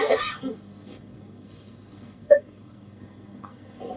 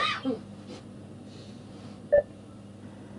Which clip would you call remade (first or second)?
first